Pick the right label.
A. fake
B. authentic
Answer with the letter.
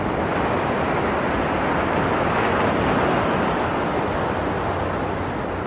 B